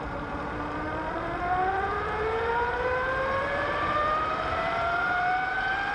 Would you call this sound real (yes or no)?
no